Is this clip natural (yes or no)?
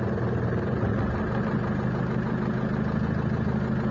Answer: yes